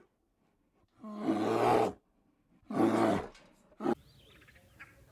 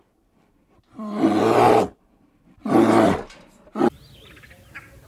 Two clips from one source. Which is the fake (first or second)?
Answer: second